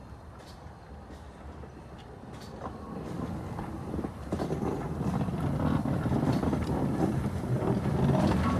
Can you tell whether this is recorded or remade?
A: remade